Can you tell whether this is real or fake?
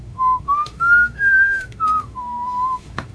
fake